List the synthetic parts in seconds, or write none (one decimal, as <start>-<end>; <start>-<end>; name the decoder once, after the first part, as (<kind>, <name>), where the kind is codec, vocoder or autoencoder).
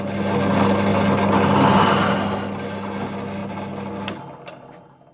none